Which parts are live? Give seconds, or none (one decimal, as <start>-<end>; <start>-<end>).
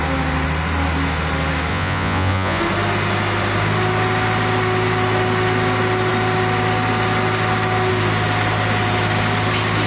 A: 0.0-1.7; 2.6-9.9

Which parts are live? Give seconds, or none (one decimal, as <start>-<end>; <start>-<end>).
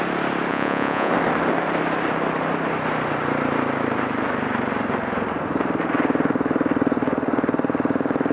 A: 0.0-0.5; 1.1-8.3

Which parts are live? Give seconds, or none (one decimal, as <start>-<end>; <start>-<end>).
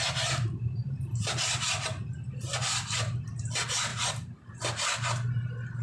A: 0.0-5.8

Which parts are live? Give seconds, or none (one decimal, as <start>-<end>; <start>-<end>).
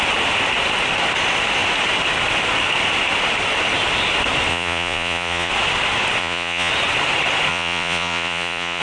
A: 0.0-4.5; 5.5-6.2; 6.7-7.5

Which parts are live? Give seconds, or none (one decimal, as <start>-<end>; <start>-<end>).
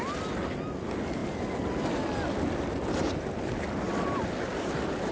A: 0.0-5.1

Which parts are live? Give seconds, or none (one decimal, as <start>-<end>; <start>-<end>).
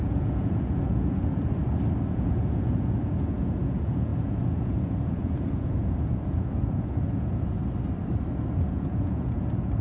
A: 1.6-2.1; 7.6-8.7